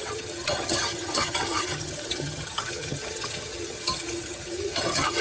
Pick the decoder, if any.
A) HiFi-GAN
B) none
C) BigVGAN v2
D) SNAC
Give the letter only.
A